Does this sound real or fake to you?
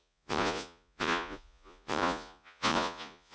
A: fake